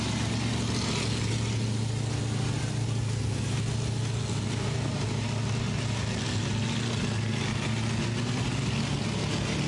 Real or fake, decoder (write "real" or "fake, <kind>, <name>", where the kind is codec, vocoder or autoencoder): real